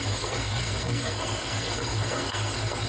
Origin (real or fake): fake